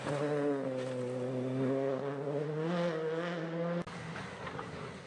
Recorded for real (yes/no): yes